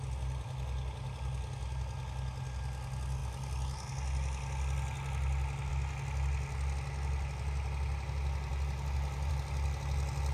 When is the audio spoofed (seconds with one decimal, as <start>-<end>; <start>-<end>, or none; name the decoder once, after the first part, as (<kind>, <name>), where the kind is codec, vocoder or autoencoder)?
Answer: none